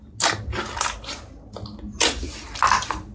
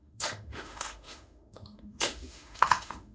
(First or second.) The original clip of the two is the first